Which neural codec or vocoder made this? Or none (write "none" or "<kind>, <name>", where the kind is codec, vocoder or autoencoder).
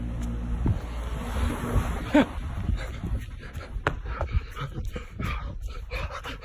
none